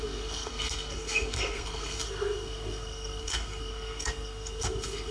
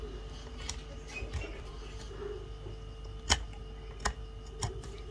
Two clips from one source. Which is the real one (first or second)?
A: second